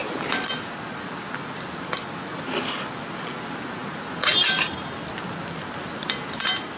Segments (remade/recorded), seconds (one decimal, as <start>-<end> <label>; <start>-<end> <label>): 0.0-6.8 recorded